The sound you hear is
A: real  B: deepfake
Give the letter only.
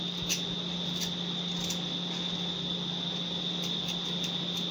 A